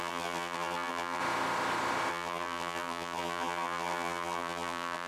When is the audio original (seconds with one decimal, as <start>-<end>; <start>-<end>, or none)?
1.2-2.1